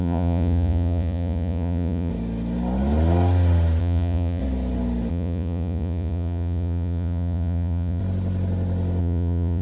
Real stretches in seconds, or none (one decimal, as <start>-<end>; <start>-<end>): 2.1-3.8; 4.4-5.1; 8.0-9.0